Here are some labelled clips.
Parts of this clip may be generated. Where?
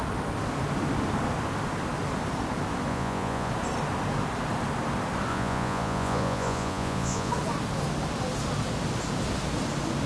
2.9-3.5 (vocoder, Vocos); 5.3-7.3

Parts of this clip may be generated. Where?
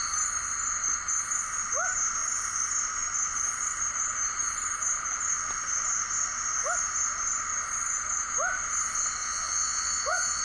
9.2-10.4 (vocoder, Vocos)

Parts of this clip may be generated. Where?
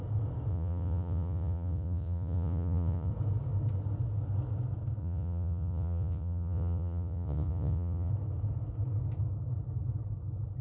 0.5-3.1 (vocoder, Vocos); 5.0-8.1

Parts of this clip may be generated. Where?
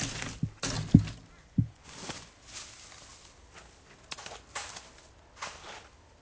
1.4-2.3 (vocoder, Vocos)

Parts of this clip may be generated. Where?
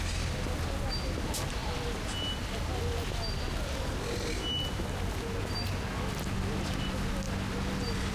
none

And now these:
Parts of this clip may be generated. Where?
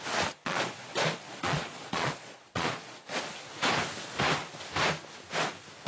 0.4-3.2 (vocoder, Vocos)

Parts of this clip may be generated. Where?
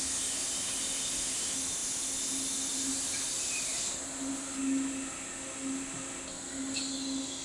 none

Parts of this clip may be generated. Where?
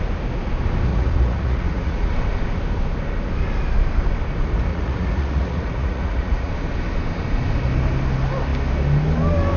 0.9-2.1 (vocoder, Vocos); 4.7-6.5